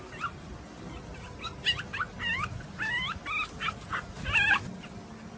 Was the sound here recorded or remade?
recorded